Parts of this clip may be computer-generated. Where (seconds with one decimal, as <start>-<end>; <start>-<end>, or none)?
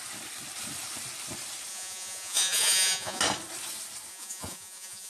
1.7-3.2; 4.1-5.1